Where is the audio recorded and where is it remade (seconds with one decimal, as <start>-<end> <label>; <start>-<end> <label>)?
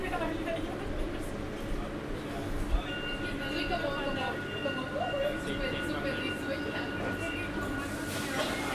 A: 0.0-0.7 remade; 0.7-8.7 recorded